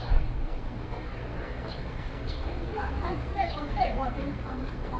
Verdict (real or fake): fake